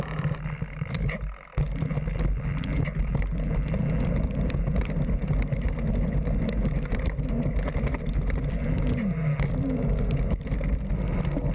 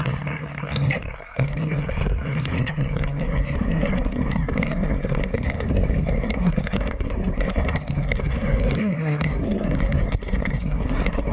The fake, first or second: second